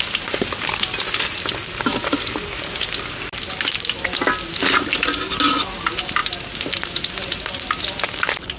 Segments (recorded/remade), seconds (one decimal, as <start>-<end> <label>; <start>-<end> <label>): 0.0-8.6 recorded